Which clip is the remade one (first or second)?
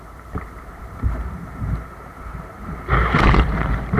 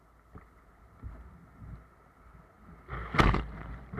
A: first